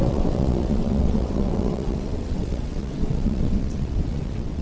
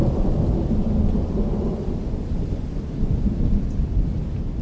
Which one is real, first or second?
second